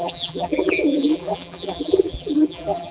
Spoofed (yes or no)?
yes